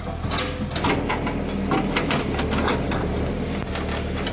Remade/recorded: recorded